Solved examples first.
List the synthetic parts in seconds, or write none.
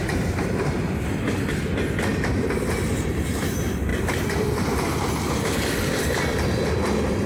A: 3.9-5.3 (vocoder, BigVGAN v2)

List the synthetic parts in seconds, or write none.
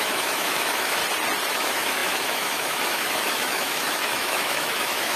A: 0.0-1.0 (autoencoder, DAC-VAE); 1.5-5.2